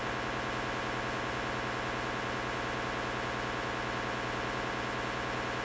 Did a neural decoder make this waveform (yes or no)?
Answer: no